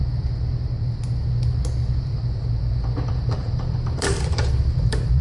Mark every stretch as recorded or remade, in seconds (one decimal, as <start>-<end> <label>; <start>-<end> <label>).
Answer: 0.0-3.1 recorded; 3.1-5.2 remade